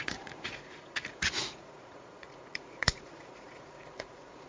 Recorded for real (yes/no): no